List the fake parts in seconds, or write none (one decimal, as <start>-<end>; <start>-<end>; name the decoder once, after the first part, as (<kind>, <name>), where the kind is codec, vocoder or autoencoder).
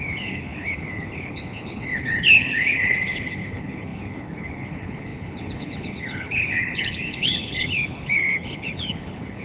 0.0-9.4 (codec, HILCodec)